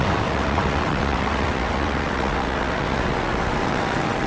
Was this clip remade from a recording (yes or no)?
yes